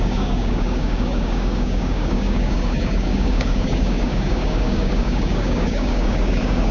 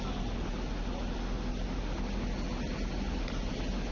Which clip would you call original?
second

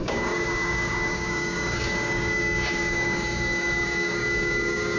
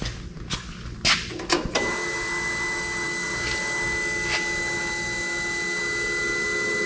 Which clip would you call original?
second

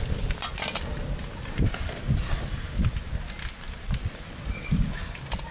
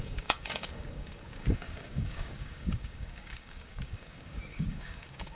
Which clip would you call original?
first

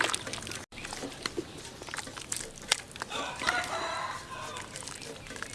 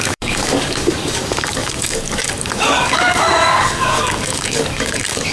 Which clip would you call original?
first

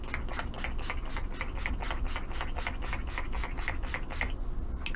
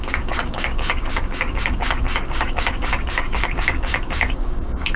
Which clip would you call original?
first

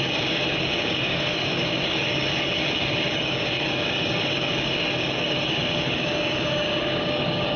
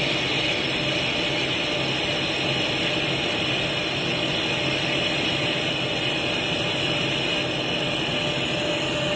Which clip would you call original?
second